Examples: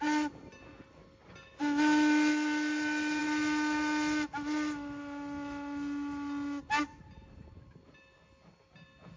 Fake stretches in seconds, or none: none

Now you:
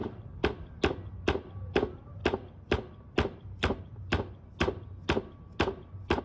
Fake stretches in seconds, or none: none

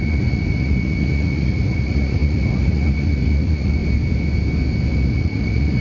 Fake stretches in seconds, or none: 0.0-3.8 (vocoder, Vocos); 4.9-5.8